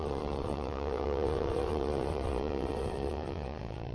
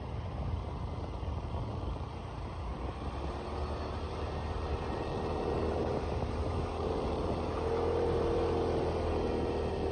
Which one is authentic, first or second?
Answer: second